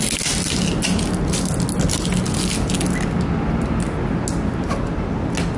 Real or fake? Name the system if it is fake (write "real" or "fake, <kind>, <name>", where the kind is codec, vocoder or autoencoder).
real